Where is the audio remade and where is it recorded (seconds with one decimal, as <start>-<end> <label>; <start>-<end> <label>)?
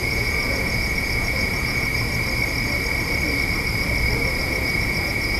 0.0-1.9 remade; 1.9-4.4 recorded; 4.4-5.4 remade